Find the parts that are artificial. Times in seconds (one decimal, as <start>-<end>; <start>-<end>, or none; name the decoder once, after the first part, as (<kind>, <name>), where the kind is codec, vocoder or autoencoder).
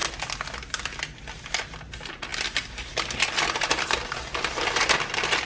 none